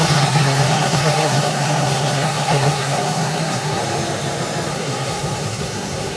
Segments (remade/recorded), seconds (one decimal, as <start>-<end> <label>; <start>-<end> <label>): 0.0-3.8 remade; 3.8-4.7 recorded; 4.7-6.2 remade